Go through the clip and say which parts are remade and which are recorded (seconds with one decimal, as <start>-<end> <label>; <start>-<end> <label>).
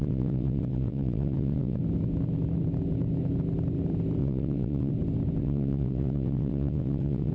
0.0-1.8 remade; 1.8-4.2 recorded; 4.2-4.9 remade; 4.9-5.4 recorded; 5.4-7.3 remade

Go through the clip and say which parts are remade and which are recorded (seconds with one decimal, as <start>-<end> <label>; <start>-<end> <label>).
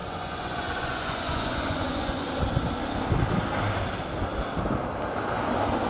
0.0-2.3 remade; 2.3-5.9 recorded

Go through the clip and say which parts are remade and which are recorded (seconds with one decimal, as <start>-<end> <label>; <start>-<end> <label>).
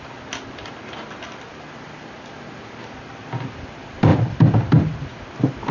0.0-5.7 remade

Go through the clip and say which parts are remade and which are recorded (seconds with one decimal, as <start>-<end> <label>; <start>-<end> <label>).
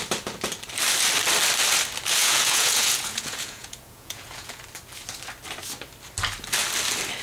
0.0-2.2 recorded; 2.2-4.6 remade; 4.6-7.2 recorded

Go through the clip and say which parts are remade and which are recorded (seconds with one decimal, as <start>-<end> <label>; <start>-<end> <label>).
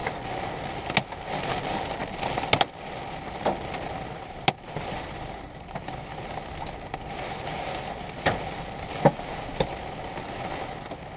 0.0-11.2 recorded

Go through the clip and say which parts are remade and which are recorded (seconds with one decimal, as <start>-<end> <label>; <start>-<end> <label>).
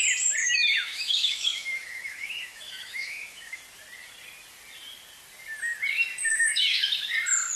0.0-0.4 recorded; 0.4-3.6 remade; 3.6-6.3 recorded; 6.3-7.1 remade; 7.1-7.6 recorded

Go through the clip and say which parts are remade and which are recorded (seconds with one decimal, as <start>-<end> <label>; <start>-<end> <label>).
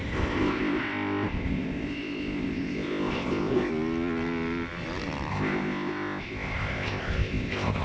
0.0-3.7 remade; 3.7-5.3 recorded; 5.3-7.8 remade